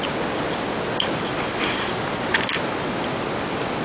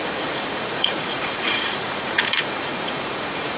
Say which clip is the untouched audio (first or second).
first